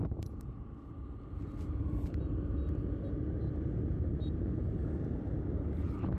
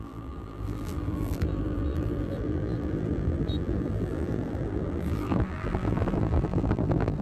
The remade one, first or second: second